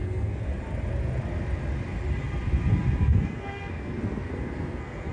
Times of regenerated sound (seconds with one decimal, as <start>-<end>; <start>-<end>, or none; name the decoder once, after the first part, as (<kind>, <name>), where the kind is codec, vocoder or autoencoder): 0.0-0.5 (codec, SNAC); 3.0-5.1